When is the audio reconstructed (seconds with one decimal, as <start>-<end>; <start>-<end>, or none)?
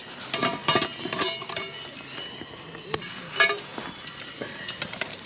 none